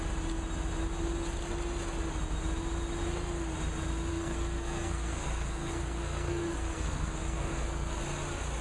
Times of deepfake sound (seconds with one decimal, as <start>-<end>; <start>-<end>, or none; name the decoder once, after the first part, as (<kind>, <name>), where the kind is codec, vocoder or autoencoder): 4.1-8.0 (codec, SNAC)